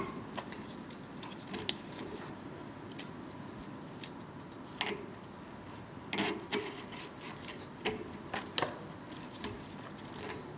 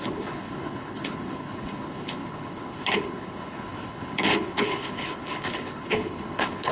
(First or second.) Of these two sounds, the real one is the first